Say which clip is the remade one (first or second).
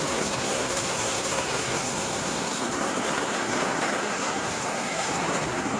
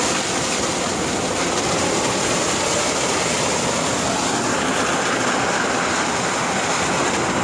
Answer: first